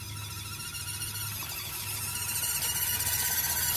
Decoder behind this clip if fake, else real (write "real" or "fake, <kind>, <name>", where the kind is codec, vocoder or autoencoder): real